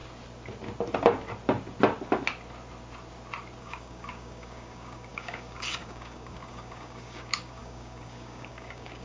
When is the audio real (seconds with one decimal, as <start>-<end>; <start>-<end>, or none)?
0.0-3.6